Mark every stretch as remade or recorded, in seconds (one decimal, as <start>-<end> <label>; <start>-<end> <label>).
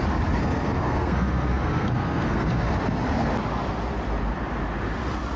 0.0-0.4 recorded; 0.4-2.7 remade; 2.7-5.4 recorded